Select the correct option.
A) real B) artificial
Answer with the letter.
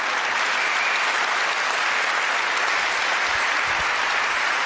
A